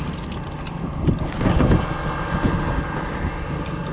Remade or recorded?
recorded